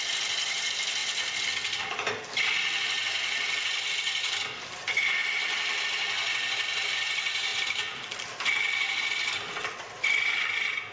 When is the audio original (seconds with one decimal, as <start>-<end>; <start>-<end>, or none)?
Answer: 0.0-10.9